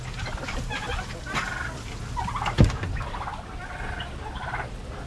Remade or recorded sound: recorded